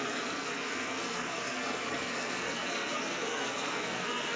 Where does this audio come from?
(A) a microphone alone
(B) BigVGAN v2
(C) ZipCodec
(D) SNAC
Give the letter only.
D